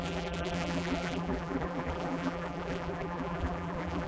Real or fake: fake